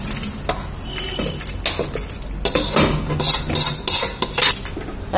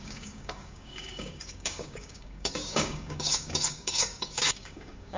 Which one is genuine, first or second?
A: first